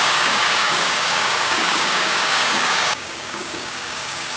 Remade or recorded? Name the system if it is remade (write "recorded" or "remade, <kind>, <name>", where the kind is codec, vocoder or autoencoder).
remade, codec, DAC